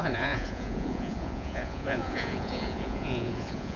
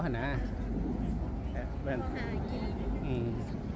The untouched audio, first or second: second